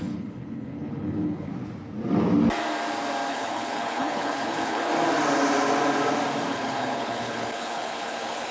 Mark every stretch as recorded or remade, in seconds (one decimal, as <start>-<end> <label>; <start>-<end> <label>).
0.0-1.5 remade; 1.5-3.3 recorded; 3.3-4.9 remade; 4.9-6.5 recorded; 6.5-8.5 remade